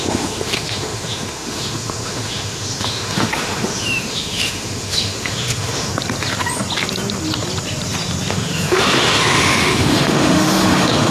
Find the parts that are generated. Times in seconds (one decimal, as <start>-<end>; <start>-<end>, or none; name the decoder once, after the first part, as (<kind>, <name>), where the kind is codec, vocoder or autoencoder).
0.0-5.9 (autoencoder, DAC-VAE); 8.3-11.1

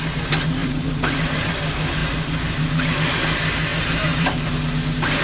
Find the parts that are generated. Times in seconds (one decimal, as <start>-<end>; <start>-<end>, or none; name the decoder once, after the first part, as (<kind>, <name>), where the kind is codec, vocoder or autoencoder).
0.6-1.5 (vocoder, BigVGAN v2); 3.7-4.6

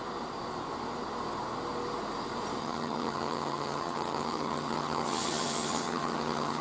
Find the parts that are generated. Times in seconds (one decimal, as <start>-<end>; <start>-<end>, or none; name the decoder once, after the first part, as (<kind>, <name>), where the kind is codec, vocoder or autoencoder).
2.6-6.6 (vocoder, HiFi-GAN)

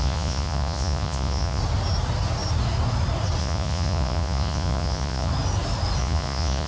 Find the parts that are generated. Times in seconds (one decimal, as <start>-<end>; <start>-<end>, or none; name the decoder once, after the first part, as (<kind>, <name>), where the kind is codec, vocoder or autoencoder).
0.0-1.6 (vocoder, Vocos); 3.4-5.3; 6.0-6.7